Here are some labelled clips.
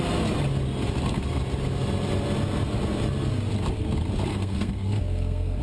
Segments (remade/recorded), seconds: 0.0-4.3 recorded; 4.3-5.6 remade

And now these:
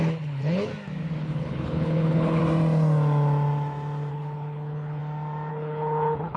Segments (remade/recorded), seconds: 0.0-0.7 remade; 0.7-1.2 recorded; 1.2-2.4 remade; 2.4-4.1 recorded; 4.1-5.0 remade; 5.0-5.5 recorded; 5.5-6.4 remade

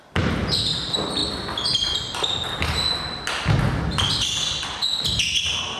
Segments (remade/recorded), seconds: 0.0-5.8 recorded

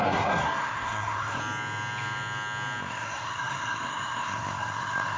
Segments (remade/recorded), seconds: 0.0-1.4 remade; 1.4-2.8 recorded; 2.8-5.2 remade

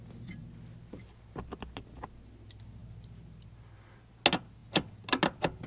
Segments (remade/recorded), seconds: 0.0-5.7 recorded

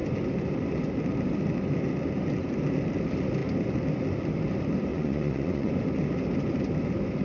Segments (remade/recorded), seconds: 0.0-4.9 recorded; 4.9-5.7 remade; 5.7-7.2 recorded

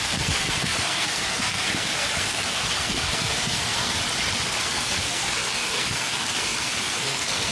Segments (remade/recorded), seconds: 0.0-4.0 remade; 4.0-4.6 recorded; 4.6-7.5 remade

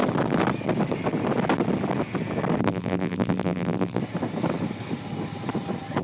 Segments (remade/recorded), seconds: 0.0-2.6 recorded; 2.6-4.0 remade; 4.0-6.0 recorded